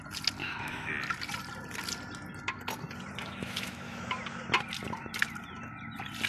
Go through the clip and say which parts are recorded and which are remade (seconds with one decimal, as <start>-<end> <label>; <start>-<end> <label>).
0.0-0.4 recorded; 0.4-0.9 remade; 0.9-3.2 recorded; 3.2-4.1 remade; 4.1-6.3 recorded